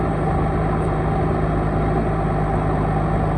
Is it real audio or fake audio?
real